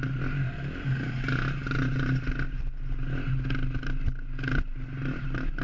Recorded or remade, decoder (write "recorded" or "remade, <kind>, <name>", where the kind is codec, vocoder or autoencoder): recorded